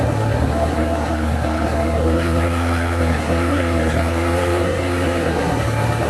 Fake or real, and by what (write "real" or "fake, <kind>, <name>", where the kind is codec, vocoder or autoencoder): fake, codec, SNAC